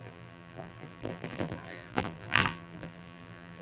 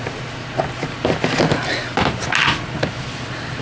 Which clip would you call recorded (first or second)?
second